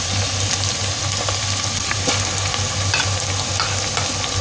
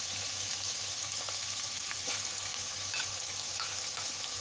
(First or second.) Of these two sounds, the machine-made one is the second